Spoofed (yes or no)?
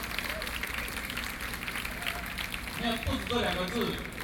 no